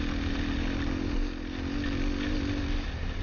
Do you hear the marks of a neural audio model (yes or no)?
no